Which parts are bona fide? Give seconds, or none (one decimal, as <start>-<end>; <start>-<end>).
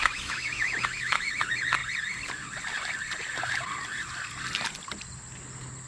1.3-5.9